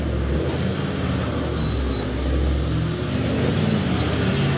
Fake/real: real